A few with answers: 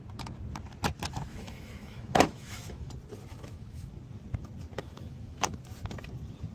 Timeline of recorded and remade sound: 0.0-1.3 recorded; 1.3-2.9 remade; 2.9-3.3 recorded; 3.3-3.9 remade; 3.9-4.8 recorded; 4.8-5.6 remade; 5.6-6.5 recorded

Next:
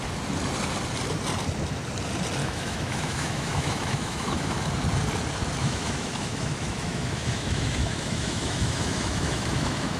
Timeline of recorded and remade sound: 0.0-2.4 recorded; 2.4-4.7 remade; 4.7-5.6 recorded; 5.6-10.0 remade

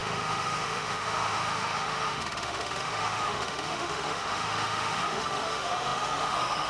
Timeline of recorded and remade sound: 0.0-6.7 remade

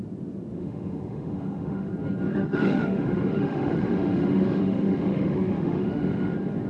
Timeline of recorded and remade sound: 0.0-0.6 recorded; 0.6-1.9 remade; 1.9-2.3 recorded; 2.3-6.3 remade; 6.3-6.7 recorded

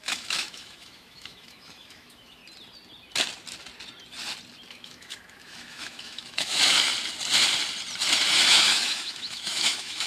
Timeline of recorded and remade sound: 0.0-2.4 remade; 2.4-4.7 recorded; 4.7-6.9 remade; 6.9-8.5 recorded; 8.5-10.1 remade

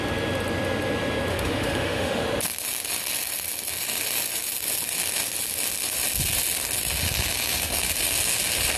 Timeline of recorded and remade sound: 0.0-1.3 recorded; 1.3-2.2 remade; 2.2-8.8 recorded